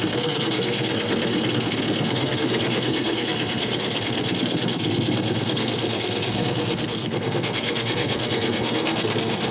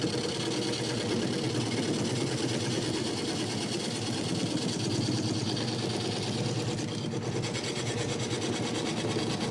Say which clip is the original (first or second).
second